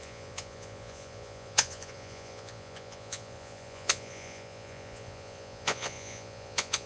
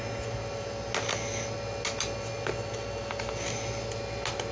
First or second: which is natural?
second